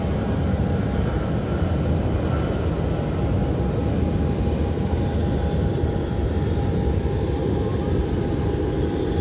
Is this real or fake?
real